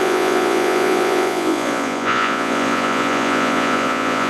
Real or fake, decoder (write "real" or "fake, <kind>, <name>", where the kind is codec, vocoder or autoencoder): fake, vocoder, Vocos